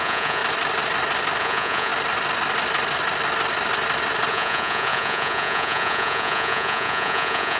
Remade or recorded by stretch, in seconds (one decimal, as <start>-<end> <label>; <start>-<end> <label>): 0.0-0.4 remade; 0.4-1.4 recorded; 1.4-1.9 remade; 1.9-4.3 recorded; 4.3-7.6 remade

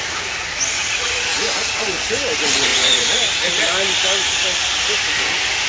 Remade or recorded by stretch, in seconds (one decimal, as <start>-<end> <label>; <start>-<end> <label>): 0.0-1.3 recorded; 1.3-1.8 remade; 1.8-2.7 recorded; 2.7-3.6 remade; 3.6-5.7 recorded